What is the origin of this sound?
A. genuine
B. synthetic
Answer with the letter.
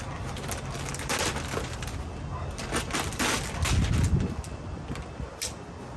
A